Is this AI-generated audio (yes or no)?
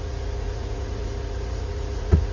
yes